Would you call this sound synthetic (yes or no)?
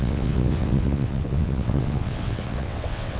yes